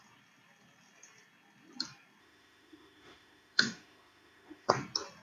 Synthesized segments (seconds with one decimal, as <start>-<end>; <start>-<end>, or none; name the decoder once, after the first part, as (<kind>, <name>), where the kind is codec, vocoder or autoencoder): 2.2-4.7 (autoencoder, DAC-VAE)